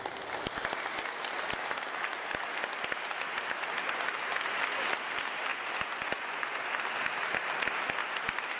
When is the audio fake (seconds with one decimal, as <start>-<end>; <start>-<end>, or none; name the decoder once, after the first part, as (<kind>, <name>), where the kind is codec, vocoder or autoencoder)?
5.5-6.6 (vocoder, Vocos)